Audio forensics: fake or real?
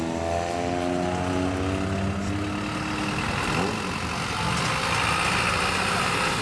real